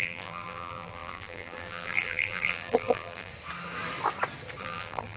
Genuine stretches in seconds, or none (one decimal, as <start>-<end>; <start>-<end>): 3.3-4.6